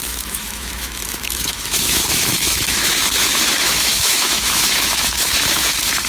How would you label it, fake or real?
fake